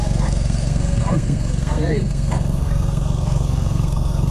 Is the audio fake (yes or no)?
yes